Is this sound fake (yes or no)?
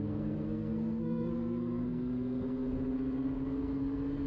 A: yes